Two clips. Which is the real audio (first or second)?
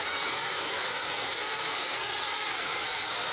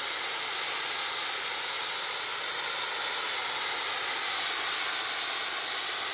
second